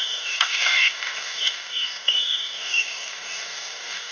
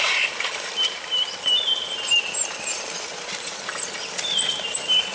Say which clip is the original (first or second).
second